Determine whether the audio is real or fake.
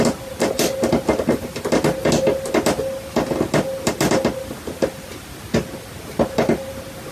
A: real